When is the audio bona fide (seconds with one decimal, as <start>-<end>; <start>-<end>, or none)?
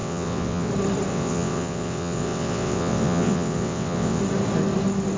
0.7-1.1; 4.2-5.2